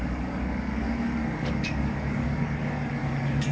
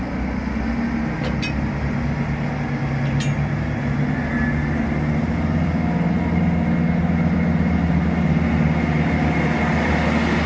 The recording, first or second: second